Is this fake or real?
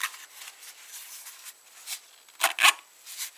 real